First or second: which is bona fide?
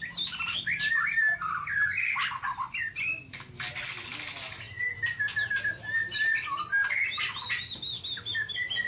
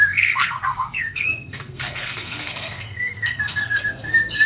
first